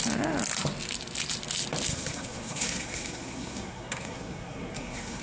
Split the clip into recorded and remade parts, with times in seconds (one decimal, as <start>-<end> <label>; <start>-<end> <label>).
0.0-1.9 recorded; 1.9-5.2 remade